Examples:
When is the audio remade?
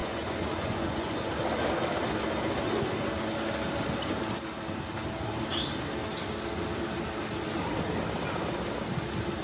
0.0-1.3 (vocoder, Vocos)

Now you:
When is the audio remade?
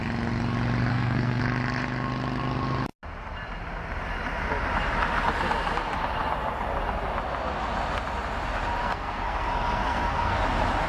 0.9-1.4 (codec, SNAC); 8.8-10.4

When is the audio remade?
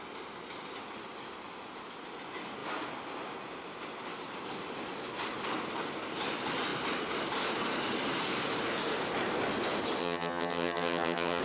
10.0-11.4 (vocoder, HiFi-GAN)